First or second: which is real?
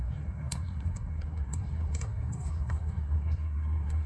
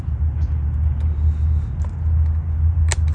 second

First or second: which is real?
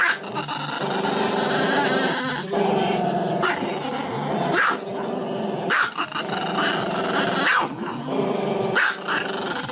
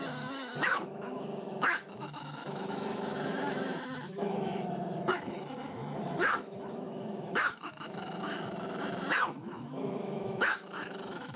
first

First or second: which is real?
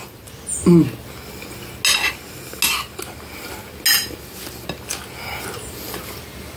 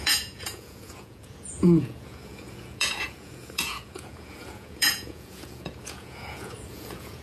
first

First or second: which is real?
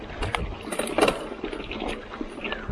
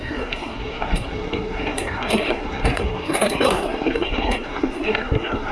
first